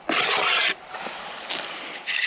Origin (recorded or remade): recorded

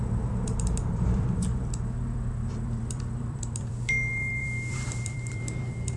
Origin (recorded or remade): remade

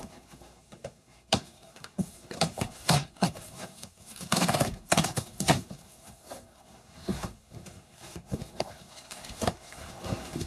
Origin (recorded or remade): remade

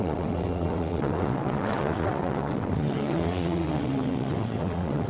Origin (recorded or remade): remade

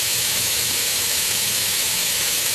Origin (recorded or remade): remade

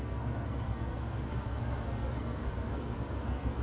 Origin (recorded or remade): remade